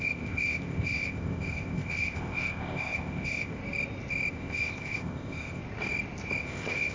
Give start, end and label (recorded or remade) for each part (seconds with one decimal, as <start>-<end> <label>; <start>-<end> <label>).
0.0-3.6 remade; 3.6-4.3 recorded; 4.3-5.6 remade; 5.6-6.4 recorded; 6.4-6.9 remade